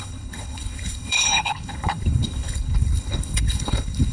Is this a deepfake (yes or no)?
yes